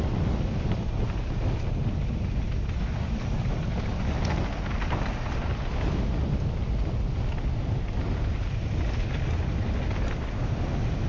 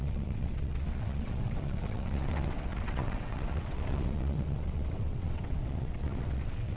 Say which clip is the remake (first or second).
second